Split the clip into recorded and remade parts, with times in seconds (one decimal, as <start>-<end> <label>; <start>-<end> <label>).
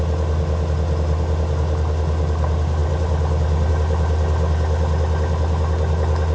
0.0-6.3 recorded